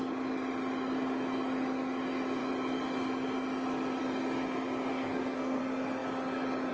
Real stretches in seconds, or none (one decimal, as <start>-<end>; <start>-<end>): 0.0-4.9; 5.6-6.7